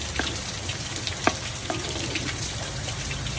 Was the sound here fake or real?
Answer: real